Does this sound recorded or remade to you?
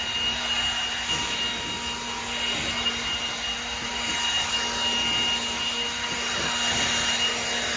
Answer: recorded